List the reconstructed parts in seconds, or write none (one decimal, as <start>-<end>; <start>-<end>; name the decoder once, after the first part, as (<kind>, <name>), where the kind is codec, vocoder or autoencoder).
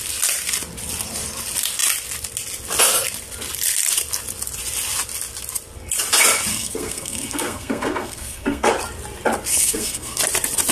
6.5-8.7 (codec, SNAC); 9.5-10.2